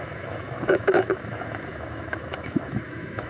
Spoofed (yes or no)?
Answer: yes